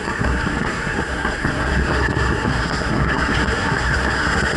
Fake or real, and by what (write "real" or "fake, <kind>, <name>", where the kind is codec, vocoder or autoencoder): fake, codec, SNAC